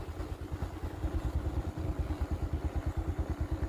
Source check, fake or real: real